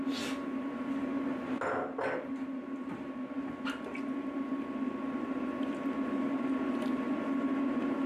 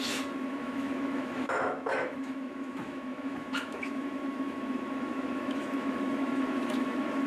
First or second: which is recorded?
first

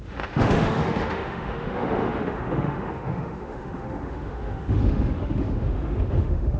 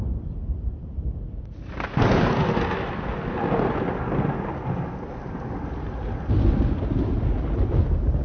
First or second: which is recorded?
second